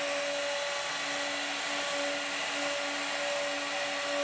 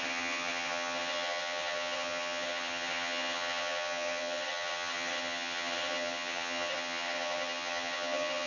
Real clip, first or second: first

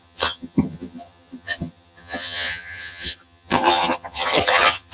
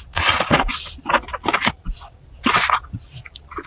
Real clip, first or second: second